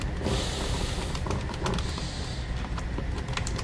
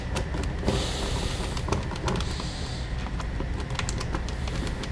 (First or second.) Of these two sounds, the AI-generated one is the first